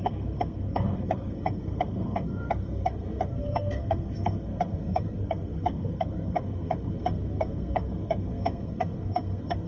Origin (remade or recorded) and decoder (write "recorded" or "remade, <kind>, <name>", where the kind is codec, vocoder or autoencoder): remade, codec, SNAC